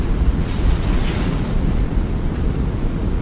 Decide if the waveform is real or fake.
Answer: fake